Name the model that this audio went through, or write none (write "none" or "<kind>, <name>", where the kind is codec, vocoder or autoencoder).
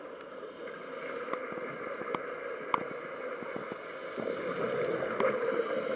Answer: none